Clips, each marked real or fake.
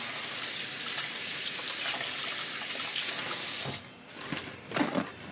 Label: real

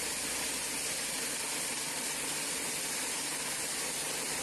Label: real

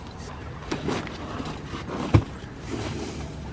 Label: real